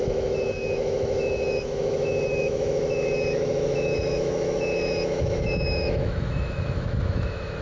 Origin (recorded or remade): remade